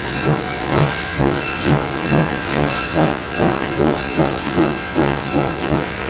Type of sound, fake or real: fake